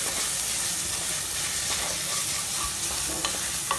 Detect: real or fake real